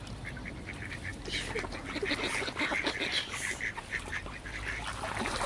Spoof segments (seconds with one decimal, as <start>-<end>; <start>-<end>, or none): 0.0-1.1; 3.9-5.5